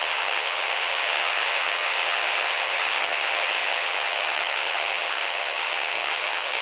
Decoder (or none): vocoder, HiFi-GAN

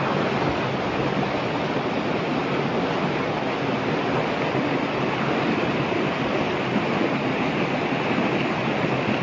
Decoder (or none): none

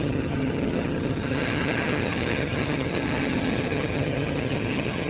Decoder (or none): vocoder, HiFi-GAN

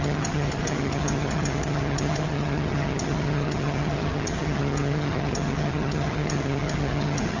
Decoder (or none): vocoder, HiFi-GAN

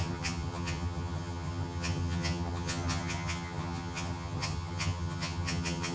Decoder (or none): vocoder, HiFi-GAN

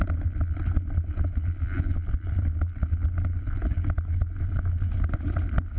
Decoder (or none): none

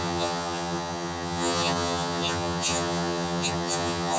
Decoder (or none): vocoder, HiFi-GAN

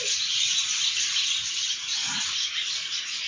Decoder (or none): none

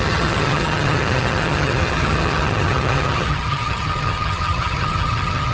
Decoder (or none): vocoder, HiFi-GAN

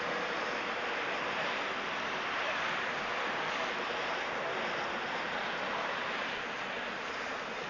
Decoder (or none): none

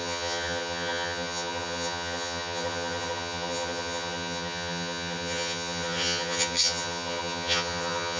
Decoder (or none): vocoder, HiFi-GAN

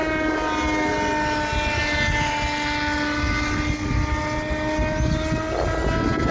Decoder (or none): none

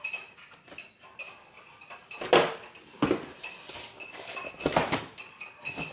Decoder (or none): none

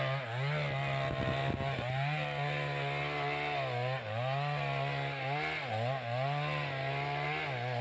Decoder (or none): none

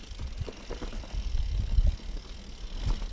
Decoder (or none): none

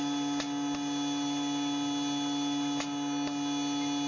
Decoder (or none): none